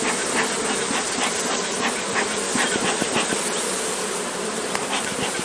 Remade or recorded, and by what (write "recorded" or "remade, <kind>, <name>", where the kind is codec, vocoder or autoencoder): recorded